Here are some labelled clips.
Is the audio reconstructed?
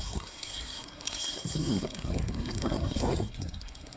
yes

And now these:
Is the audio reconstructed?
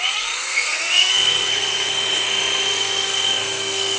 yes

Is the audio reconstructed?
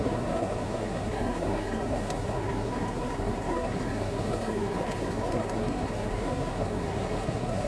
yes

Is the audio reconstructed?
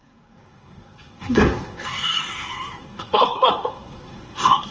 yes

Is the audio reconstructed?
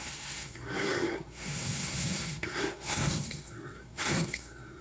yes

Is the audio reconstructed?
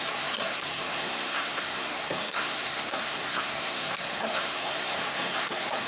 yes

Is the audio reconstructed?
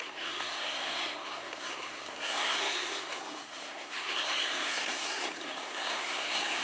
yes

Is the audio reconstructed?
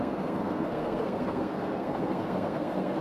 yes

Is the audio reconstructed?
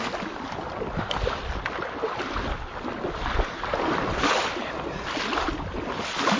no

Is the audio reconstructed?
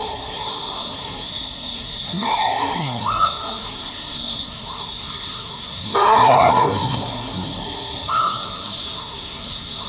yes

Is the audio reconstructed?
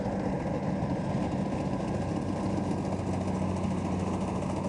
no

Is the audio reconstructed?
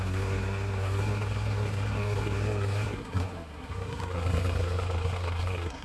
yes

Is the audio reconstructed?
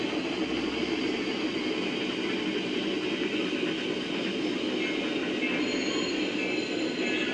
no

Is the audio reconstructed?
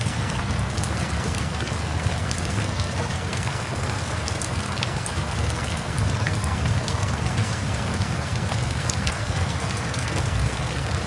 yes